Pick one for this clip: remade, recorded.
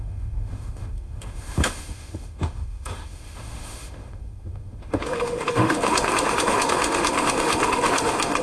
remade